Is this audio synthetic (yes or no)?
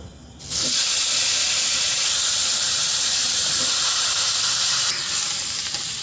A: no